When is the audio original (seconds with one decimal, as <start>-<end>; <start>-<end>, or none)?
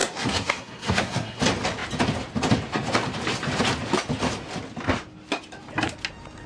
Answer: 1.4-6.5